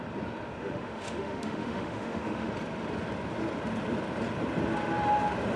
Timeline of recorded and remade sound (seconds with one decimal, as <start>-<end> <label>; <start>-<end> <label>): 0.0-0.6 recorded; 0.6-2.5 remade; 2.5-5.6 recorded